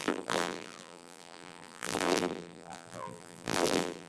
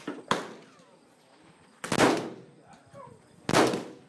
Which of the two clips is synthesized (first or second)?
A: first